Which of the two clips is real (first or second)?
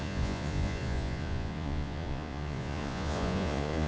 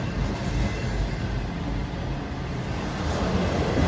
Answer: second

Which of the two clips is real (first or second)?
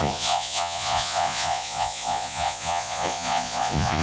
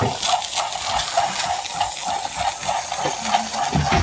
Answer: second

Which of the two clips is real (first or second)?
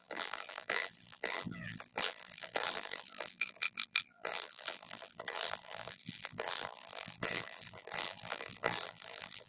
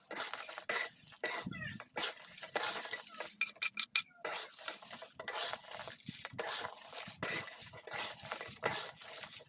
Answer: second